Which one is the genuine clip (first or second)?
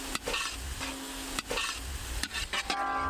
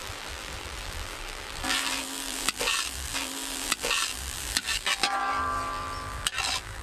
first